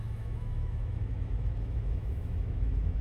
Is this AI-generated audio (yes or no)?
yes